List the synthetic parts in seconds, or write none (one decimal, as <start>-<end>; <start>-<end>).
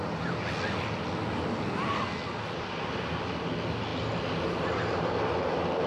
none